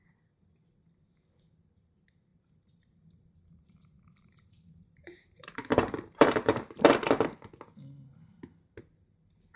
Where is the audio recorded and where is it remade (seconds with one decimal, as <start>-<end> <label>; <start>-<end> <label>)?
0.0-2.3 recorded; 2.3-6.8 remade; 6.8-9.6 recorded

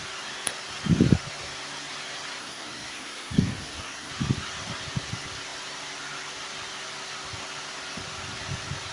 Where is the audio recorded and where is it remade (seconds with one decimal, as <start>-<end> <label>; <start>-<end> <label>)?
0.0-2.4 recorded; 2.4-4.1 remade; 4.1-8.9 recorded

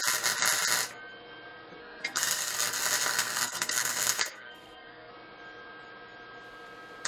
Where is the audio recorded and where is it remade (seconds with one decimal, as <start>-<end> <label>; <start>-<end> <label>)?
0.0-1.8 recorded; 1.8-2.5 remade; 2.5-3.1 recorded; 3.1-5.1 remade; 5.1-7.1 recorded